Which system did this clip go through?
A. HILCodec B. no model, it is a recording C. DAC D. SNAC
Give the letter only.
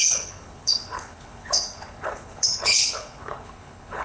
A